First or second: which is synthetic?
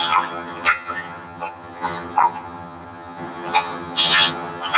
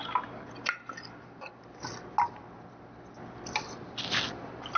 first